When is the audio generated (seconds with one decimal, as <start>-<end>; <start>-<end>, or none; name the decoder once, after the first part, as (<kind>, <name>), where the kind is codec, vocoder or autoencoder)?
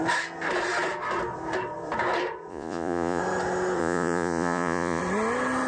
2.5-3.2 (vocoder, Vocos); 3.8-5.0